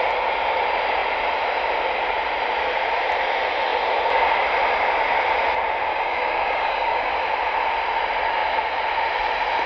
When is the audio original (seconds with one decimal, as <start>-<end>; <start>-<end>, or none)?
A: 0.0-5.9; 7.1-9.7